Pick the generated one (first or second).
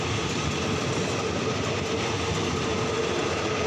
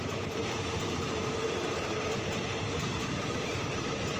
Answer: second